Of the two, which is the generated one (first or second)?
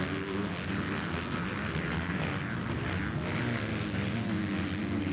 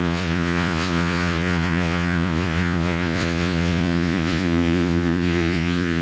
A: second